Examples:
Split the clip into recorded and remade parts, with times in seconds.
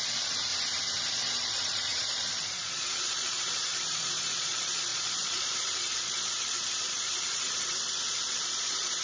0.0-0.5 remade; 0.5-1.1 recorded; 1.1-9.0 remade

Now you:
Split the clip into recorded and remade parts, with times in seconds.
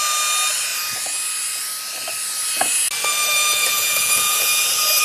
0.0-3.4 recorded; 3.4-4.6 remade; 4.6-5.0 recorded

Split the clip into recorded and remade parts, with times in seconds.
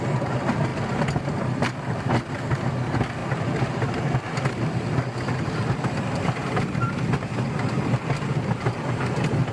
0.0-9.5 recorded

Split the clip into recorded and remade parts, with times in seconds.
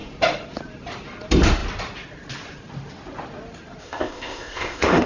0.0-3.8 recorded; 3.8-5.1 remade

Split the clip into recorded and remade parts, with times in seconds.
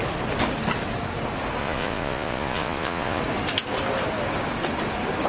0.0-1.6 recorded; 1.6-3.2 remade; 3.2-5.3 recorded